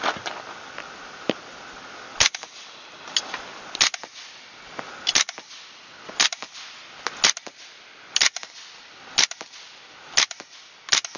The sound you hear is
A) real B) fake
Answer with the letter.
A